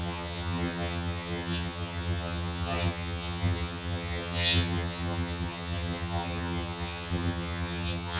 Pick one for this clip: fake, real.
fake